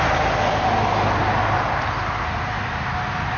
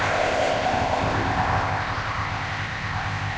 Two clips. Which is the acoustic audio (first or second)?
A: first